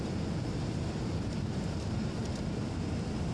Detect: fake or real real